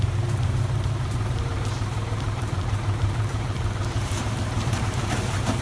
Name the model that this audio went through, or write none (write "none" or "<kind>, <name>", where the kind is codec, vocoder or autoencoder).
vocoder, BigVGAN v2